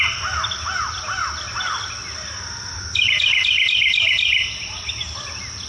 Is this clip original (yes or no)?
yes